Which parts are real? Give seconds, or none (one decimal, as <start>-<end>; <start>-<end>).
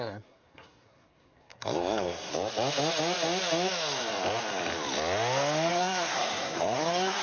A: 2.3-5.7